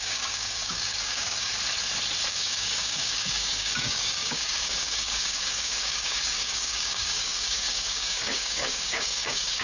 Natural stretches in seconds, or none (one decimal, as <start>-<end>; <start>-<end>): 1.5-2.3